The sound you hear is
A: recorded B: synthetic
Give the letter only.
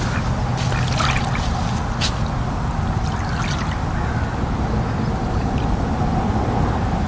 A